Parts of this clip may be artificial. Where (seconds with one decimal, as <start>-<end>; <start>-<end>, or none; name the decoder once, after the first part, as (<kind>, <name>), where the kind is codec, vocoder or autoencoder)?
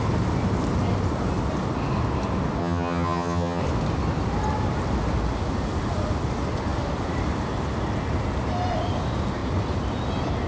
2.6-3.6 (vocoder, HiFi-GAN)